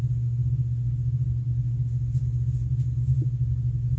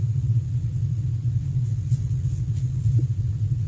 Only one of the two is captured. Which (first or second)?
first